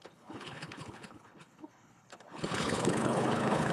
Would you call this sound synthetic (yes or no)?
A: yes